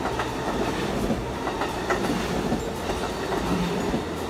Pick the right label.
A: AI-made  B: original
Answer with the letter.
B